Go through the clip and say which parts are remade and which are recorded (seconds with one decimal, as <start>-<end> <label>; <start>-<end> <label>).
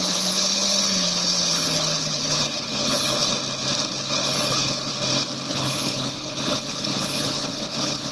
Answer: 0.0-3.3 remade; 3.3-3.9 recorded; 3.9-4.9 remade; 4.9-5.5 recorded; 5.5-8.1 remade